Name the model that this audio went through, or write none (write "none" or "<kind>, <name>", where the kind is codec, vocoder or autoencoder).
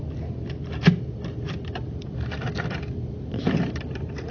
none